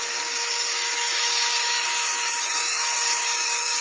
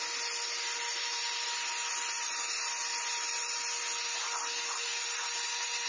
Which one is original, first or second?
second